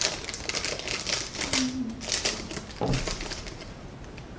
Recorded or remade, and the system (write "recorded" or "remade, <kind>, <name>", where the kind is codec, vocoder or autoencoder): recorded